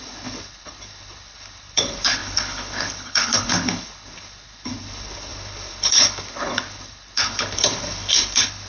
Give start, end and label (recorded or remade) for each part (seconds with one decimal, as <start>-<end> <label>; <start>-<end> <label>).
0.0-8.7 remade